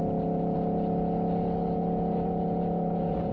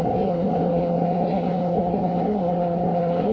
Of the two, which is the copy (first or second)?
second